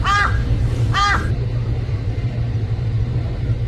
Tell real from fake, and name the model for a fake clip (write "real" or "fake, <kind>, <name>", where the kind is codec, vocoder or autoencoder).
fake, vocoder, BigVGAN v2